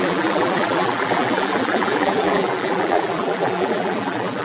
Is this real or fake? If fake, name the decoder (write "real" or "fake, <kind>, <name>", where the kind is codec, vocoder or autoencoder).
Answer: fake, vocoder, BigVGAN v2